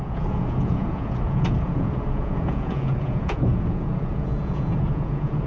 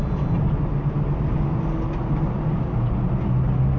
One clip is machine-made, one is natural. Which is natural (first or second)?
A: second